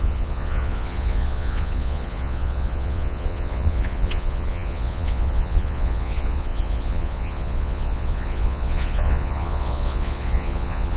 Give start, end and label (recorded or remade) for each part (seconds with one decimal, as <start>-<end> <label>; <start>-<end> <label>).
0.0-11.0 remade